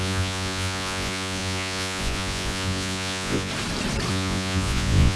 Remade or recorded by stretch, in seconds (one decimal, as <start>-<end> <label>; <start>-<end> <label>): 0.0-3.5 remade; 3.5-4.1 recorded; 4.1-5.2 remade